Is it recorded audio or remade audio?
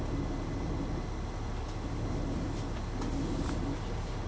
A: recorded